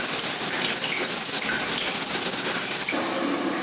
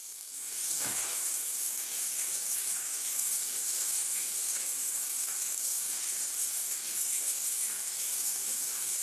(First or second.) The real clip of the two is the first